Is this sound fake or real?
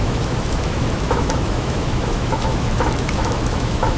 fake